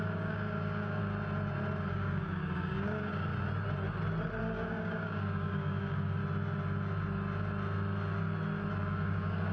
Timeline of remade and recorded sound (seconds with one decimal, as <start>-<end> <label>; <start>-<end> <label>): 0.0-1.0 remade; 1.0-1.9 recorded; 1.9-3.3 remade; 3.3-4.4 recorded; 4.4-6.2 remade; 6.2-8.8 recorded; 8.8-9.5 remade